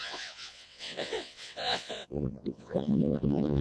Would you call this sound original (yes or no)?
no